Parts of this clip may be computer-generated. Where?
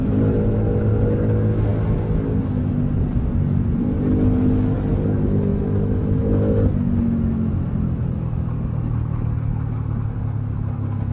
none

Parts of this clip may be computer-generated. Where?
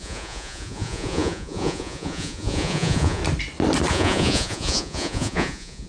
0.0-3.2 (vocoder, Vocos); 3.9-5.9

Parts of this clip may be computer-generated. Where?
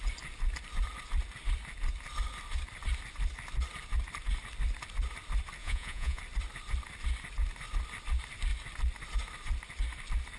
5.6-6.2 (vocoder, Vocos)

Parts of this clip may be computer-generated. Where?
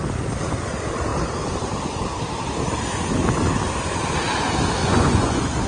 4.8-5.7 (vocoder, Vocos)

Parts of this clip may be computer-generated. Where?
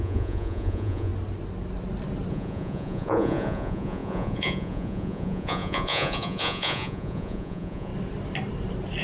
0.0-1.1 (vocoder, Vocos); 2.3-7.9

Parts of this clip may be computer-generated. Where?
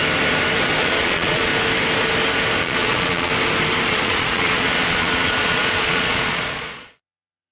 0.8-1.5 (vocoder, Vocos); 2.6-3.3; 3.9-7.5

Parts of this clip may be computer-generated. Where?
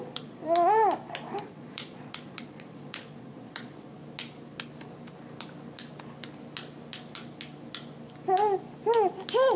0.0-0.4 (vocoder, Vocos); 1.4-4.0